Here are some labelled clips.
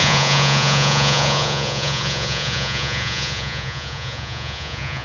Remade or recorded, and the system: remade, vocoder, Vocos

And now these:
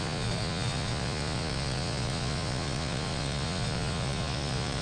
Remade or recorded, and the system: remade, vocoder, Vocos